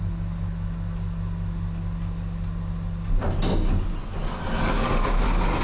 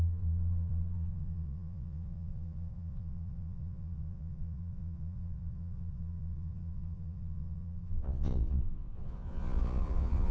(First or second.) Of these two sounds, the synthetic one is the second